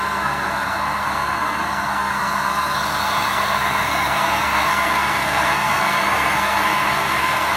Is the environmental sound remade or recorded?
remade